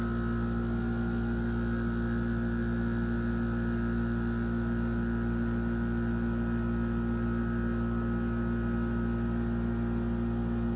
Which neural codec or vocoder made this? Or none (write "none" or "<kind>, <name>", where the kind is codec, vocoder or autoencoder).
none